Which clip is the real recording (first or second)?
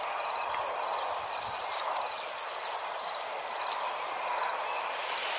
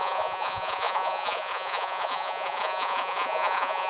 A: first